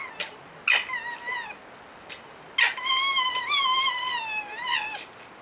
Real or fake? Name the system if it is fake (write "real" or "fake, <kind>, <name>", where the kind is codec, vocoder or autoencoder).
real